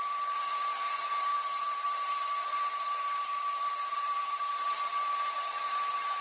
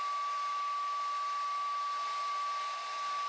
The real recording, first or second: second